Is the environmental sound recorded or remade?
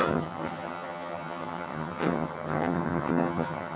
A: remade